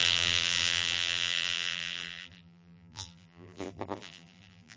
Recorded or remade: remade